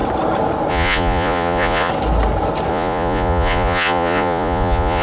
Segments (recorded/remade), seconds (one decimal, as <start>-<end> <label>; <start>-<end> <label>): 0.0-0.7 recorded; 0.7-1.9 remade; 1.9-2.7 recorded; 2.7-5.0 remade